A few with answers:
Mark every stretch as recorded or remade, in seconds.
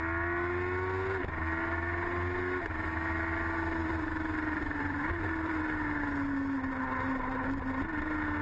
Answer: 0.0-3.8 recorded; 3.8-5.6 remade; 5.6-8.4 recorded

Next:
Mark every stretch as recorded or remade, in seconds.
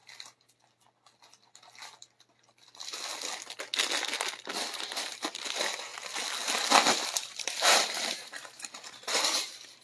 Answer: 0.0-5.1 recorded; 5.1-5.9 remade; 5.9-6.9 recorded; 6.9-9.8 remade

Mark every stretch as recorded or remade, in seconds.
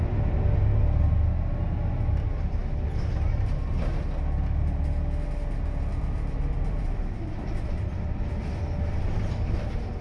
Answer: 0.0-5.9 recorded; 5.9-8.3 remade; 8.3-10.0 recorded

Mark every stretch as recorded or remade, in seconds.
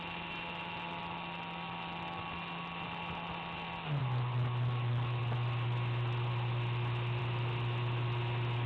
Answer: 0.0-8.7 recorded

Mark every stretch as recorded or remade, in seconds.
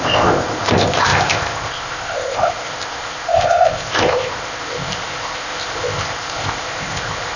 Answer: 0.0-7.4 remade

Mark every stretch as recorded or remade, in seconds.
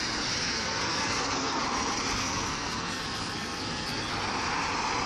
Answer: 0.0-0.4 recorded; 0.4-1.6 remade; 1.6-2.2 recorded; 2.2-4.1 remade; 4.1-5.1 recorded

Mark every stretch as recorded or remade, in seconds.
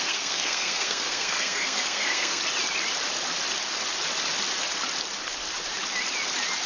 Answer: 0.0-2.4 remade; 2.4-6.7 recorded